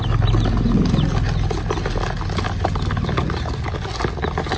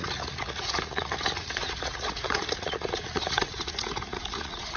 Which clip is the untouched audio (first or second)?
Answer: first